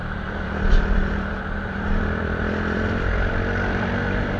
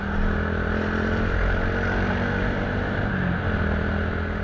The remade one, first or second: first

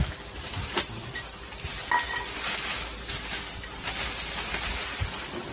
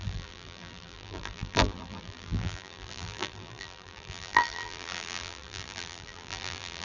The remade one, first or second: second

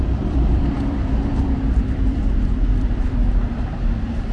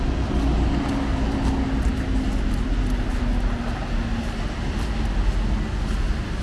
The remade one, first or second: first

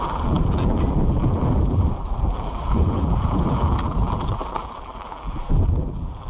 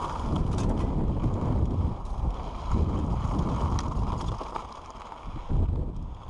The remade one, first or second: first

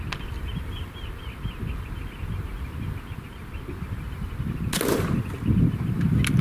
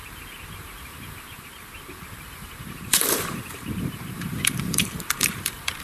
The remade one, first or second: second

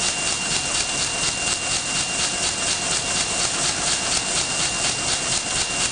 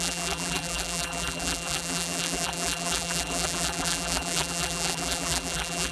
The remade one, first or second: second